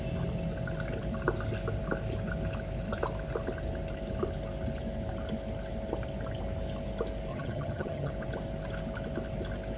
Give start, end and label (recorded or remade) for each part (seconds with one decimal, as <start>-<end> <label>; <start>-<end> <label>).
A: 0.0-7.3 recorded; 7.3-8.1 remade; 8.1-9.8 recorded